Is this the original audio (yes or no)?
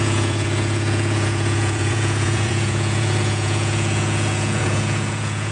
no